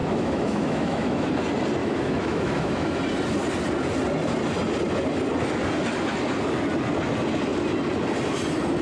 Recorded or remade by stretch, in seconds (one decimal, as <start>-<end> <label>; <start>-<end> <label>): 0.0-1.3 remade; 1.3-1.8 recorded; 1.8-3.0 remade; 3.0-8.8 recorded